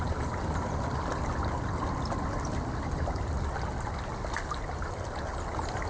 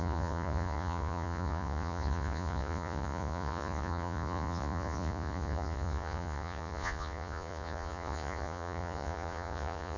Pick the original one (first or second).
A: first